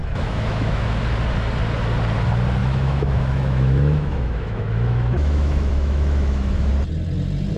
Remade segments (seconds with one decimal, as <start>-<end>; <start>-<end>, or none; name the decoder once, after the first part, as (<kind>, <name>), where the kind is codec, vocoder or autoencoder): 0.0-1.0 (autoencoder, DAC-VAE); 2.6-6.7